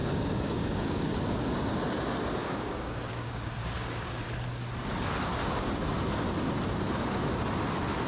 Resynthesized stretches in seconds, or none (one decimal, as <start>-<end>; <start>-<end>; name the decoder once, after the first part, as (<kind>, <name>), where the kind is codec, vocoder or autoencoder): 0.0-1.8 (codec, DAC); 2.4-4.2; 5.4-5.9